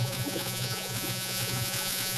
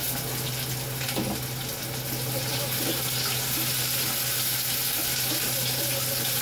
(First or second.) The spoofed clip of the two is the first